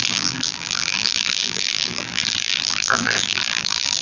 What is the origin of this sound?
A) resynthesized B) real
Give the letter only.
A